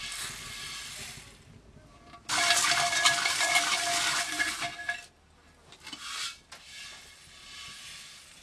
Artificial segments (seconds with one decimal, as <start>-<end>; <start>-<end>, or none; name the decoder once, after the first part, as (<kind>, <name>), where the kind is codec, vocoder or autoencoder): 4.1-4.6 (vocoder, Vocos)